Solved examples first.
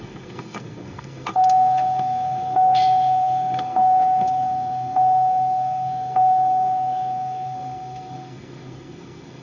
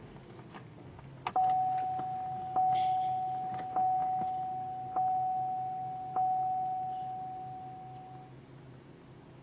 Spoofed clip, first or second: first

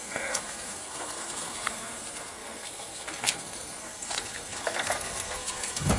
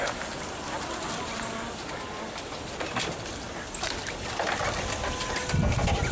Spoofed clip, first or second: first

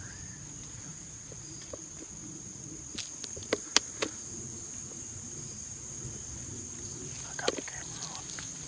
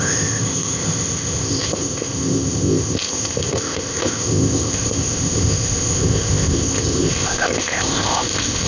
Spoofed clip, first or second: second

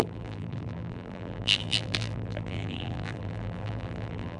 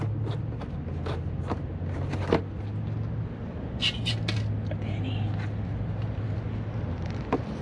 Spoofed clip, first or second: first